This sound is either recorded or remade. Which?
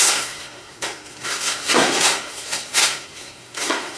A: remade